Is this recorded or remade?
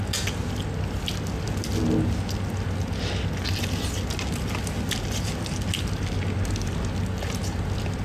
recorded